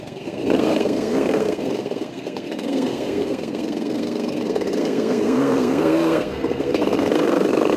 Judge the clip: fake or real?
fake